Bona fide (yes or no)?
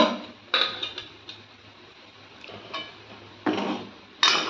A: yes